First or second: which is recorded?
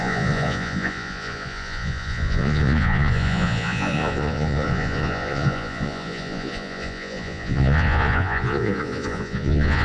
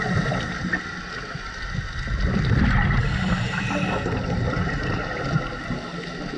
second